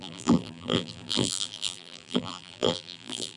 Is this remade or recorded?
remade